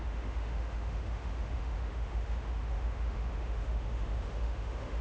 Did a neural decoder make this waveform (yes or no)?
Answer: yes